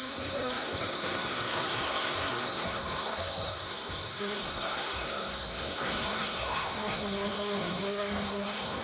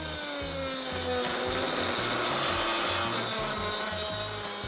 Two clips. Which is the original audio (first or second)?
second